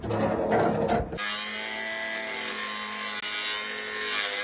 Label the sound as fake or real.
real